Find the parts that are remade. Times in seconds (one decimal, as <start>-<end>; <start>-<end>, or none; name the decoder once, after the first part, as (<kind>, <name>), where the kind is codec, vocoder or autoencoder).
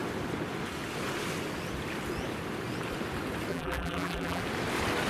3.5-4.4 (vocoder, BigVGAN v2)